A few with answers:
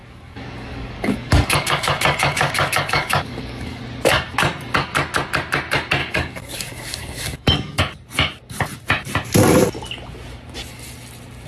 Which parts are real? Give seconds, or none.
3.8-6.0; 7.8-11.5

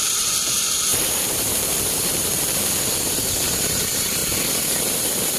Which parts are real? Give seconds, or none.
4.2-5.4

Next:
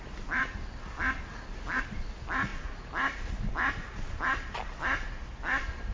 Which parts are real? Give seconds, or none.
0.0-5.9

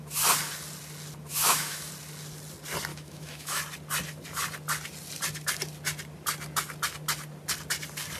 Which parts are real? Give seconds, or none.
0.0-1.3; 1.9-2.9; 3.6-8.2

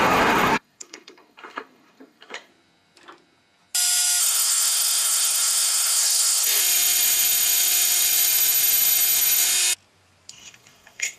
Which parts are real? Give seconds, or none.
2.5-4.2; 6.6-10.3

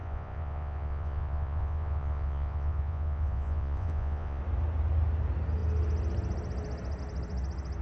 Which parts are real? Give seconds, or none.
4.4-7.8

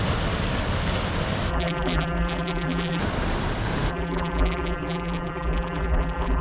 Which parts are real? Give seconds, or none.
0.0-1.5; 3.0-3.9